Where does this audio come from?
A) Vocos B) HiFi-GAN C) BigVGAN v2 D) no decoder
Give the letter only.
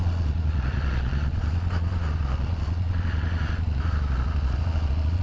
A